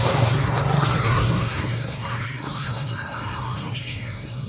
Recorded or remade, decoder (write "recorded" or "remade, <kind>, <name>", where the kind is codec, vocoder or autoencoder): remade, codec, SNAC